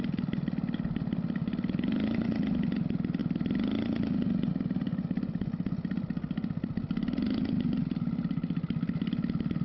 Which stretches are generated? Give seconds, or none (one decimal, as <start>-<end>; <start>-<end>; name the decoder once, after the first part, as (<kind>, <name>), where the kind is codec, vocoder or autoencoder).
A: none